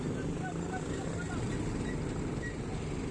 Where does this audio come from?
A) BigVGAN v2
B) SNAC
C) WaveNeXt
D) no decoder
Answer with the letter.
D